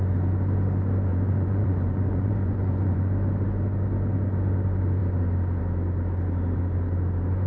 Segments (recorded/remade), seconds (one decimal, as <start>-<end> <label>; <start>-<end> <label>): 0.0-1.1 recorded; 1.1-3.1 remade; 3.1-7.5 recorded